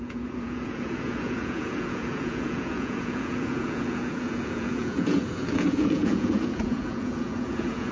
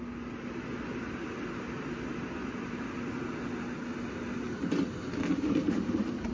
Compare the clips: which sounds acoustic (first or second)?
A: second